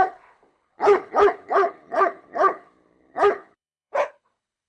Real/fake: fake